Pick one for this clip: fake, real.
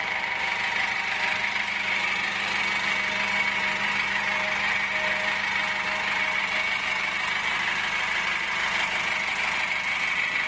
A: real